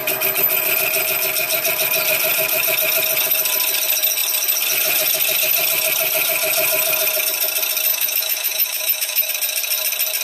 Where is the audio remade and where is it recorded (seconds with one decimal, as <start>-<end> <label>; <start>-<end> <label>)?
0.0-7.9 recorded; 7.9-9.3 remade; 9.3-10.2 recorded